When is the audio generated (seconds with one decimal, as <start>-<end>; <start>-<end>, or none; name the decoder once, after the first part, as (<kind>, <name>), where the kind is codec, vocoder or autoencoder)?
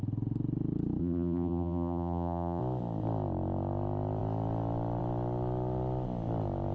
1.0-2.6 (vocoder, BigVGAN v2)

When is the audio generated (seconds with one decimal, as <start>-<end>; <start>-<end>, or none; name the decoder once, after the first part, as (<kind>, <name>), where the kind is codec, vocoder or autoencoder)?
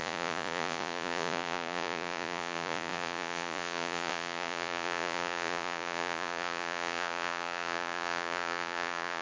0.0-9.2 (vocoder, Vocos)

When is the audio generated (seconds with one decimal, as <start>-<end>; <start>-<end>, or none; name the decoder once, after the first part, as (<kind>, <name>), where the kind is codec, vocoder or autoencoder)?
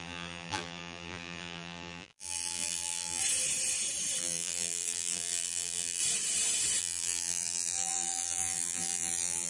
0.0-3.2 (vocoder, BigVGAN v2); 4.2-6.0; 6.8-9.5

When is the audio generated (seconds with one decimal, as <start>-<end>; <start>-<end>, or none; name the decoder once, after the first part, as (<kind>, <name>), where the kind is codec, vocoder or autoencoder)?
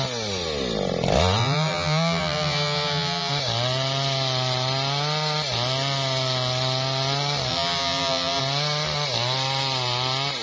1.4-3.3 (vocoder, BigVGAN v2); 7.5-8.4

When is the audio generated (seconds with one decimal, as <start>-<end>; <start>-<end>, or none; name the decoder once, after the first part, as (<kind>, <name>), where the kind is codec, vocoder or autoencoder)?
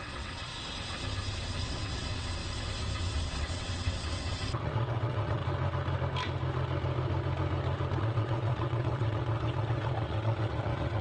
0.0-0.5 (vocoder, WaveNeXt); 1.6-2.4; 3.0-5.4; 8.0-11.0